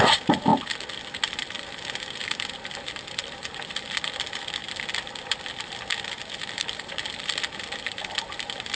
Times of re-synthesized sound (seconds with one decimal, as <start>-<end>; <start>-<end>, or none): 0.0-0.5; 1.3-8.7

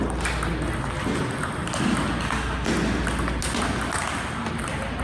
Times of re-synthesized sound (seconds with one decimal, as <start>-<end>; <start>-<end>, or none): none

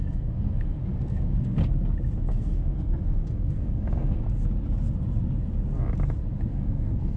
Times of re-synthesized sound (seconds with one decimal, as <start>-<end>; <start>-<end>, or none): 0.0-1.6; 2.3-4.2; 6.5-7.2

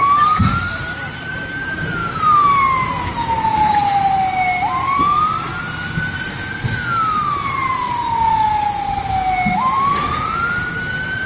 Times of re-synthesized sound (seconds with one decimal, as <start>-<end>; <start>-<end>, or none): none